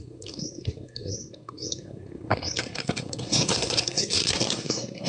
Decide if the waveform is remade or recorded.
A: remade